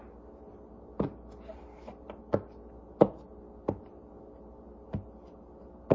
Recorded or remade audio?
recorded